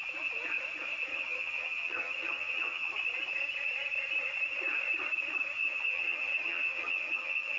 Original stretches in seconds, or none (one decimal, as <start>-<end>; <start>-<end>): 0.0-1.1; 2.9-5.6